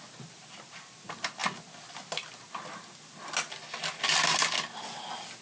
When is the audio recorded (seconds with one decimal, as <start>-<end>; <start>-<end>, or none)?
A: 0.0-5.4